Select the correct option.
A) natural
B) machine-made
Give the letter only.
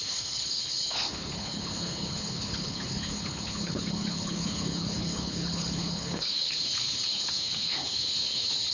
B